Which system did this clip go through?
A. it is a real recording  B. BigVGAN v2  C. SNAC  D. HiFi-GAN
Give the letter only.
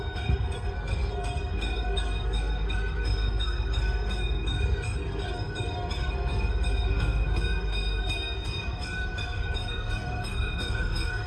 C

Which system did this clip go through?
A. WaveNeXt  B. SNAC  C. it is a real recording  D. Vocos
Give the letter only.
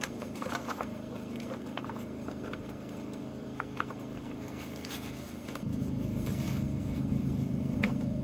B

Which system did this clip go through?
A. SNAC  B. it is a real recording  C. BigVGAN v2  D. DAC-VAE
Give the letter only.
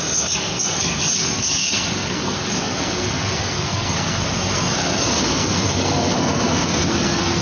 A